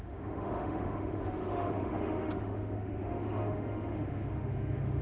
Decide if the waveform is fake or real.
fake